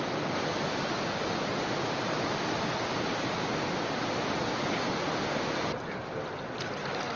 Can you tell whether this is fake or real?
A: real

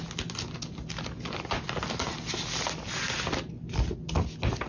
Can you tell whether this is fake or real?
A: real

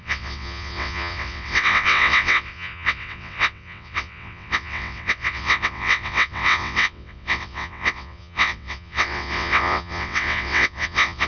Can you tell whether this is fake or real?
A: fake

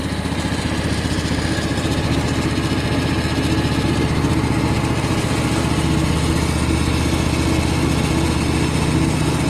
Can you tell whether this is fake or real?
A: real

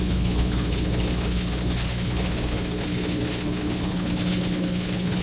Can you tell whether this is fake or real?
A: fake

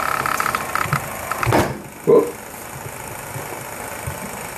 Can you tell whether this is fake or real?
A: real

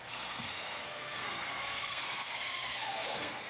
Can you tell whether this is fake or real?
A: fake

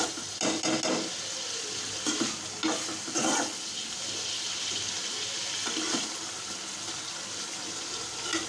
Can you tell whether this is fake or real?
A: real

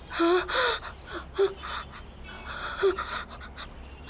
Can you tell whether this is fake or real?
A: real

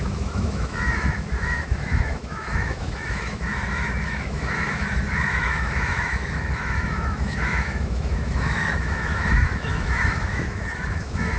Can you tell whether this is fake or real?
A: fake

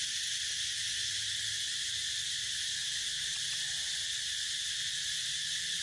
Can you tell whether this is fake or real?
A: real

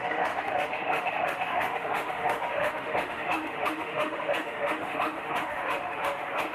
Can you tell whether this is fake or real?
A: fake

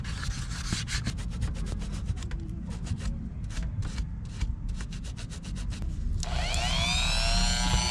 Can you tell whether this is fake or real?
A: real